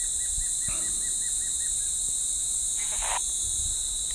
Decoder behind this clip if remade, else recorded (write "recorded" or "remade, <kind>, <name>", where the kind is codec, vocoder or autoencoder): recorded